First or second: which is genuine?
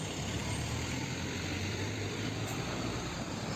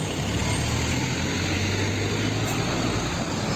second